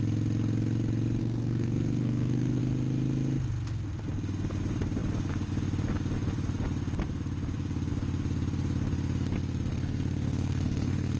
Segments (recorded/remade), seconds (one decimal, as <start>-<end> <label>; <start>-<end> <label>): 0.0-1.2 recorded; 1.2-2.6 remade; 2.6-9.7 recorded; 9.7-11.2 remade